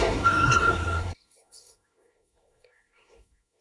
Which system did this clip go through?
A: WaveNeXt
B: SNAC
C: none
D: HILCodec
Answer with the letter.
B